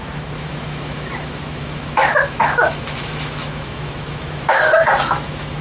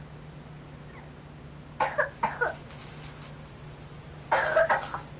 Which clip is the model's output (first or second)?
first